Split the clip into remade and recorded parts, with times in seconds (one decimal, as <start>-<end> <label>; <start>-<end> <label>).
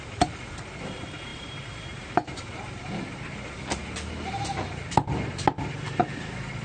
0.0-1.3 recorded; 1.3-2.4 remade; 2.4-6.6 recorded